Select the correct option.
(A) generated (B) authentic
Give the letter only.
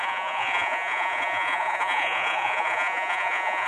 A